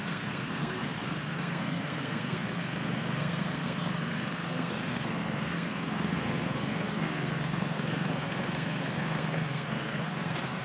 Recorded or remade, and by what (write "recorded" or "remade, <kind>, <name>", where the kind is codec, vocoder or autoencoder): remade, codec, SNAC